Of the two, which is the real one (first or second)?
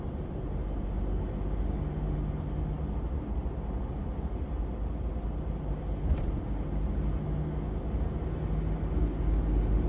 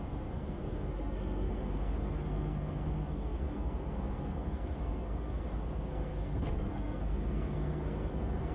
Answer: first